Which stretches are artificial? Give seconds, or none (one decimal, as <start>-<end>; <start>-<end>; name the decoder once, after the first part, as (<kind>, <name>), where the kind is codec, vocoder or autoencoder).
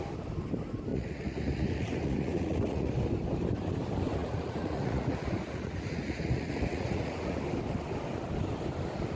0.9-2.9 (vocoder, Vocos); 4.2-7.4